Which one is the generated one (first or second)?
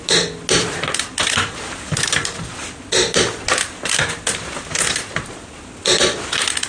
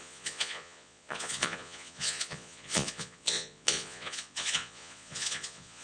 second